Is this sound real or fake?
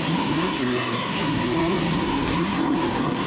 fake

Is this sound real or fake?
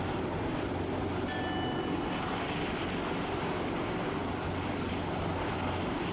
real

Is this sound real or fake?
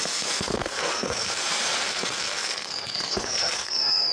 fake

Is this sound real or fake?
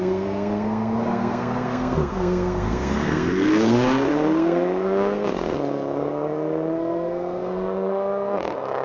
fake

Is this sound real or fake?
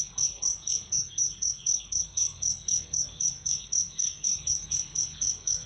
fake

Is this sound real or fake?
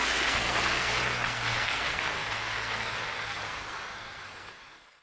fake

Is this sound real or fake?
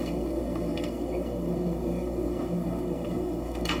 fake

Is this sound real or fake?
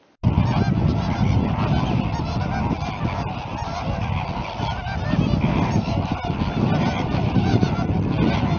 real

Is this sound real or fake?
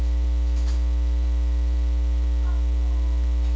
real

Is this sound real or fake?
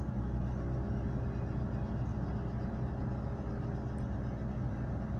real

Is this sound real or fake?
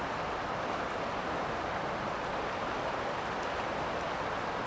real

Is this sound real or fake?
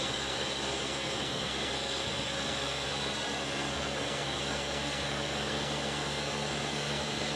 fake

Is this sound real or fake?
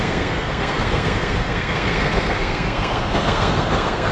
fake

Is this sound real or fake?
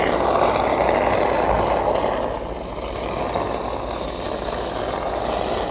real